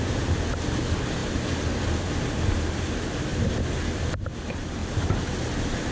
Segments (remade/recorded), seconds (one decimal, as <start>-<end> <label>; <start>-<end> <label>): 0.0-1.2 recorded; 1.2-2.9 remade; 2.9-5.9 recorded